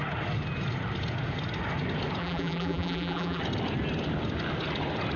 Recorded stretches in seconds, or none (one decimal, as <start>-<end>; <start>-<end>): 0.0-2.2; 3.4-5.2